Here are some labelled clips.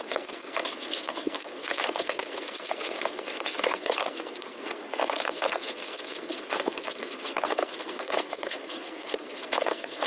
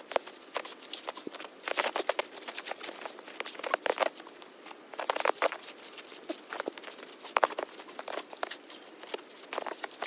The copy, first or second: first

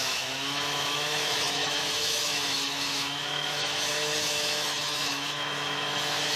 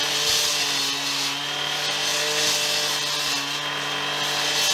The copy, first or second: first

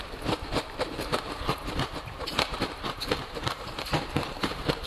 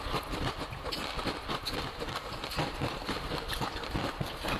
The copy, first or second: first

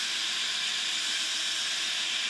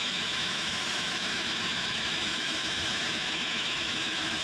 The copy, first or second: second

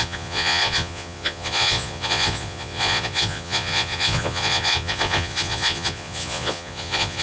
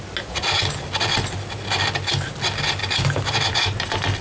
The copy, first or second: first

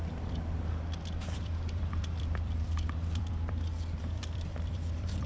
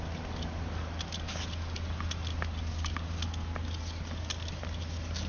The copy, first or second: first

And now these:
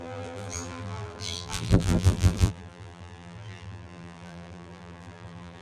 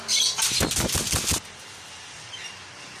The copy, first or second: first